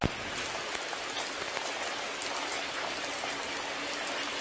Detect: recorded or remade recorded